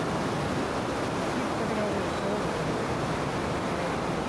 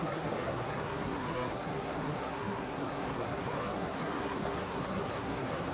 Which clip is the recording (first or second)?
first